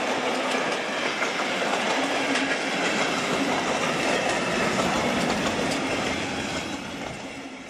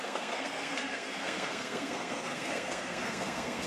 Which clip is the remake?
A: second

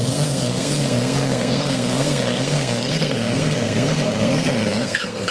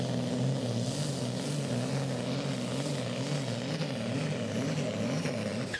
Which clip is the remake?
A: first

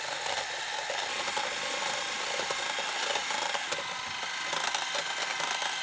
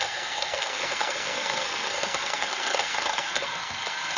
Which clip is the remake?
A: second